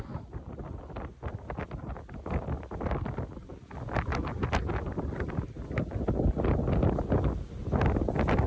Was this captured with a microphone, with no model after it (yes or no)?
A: yes